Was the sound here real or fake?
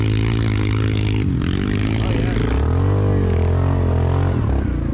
real